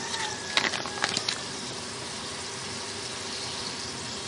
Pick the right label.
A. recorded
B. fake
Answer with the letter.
B